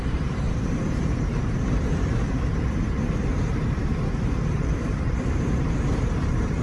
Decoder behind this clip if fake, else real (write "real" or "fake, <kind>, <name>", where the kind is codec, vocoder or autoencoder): fake, vocoder, BigVGAN v2